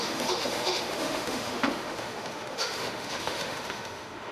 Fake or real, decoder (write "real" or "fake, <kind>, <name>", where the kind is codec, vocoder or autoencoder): fake, autoencoder, DAC-VAE